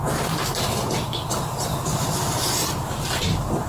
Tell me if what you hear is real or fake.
real